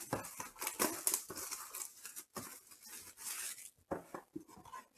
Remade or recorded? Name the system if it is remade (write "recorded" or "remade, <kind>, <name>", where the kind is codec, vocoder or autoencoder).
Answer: recorded